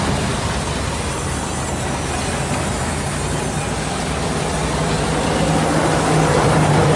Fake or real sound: real